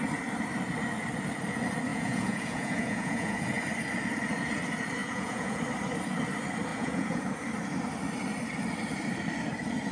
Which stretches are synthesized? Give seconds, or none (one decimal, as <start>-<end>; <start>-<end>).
1.9-3.4; 5.0-5.6; 6.7-7.3